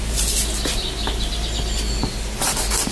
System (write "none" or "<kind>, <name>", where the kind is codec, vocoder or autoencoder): none